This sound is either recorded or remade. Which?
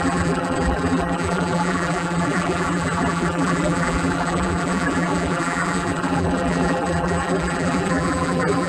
remade